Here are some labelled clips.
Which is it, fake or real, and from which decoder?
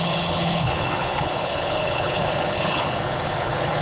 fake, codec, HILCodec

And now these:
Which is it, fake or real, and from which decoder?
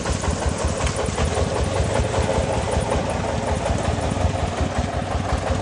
real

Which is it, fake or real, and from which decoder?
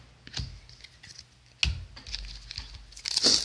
real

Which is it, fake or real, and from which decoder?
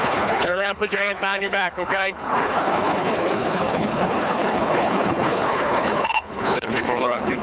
fake, codec, HILCodec